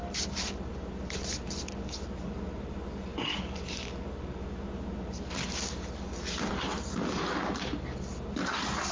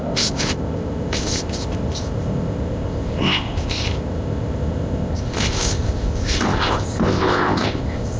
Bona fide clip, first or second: first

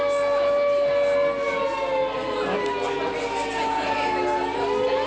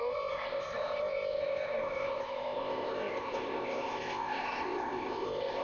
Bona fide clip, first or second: first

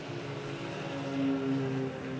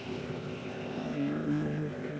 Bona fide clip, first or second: first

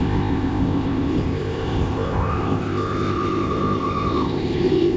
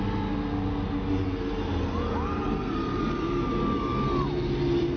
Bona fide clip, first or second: second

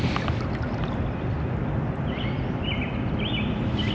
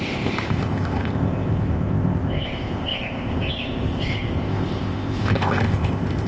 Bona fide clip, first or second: first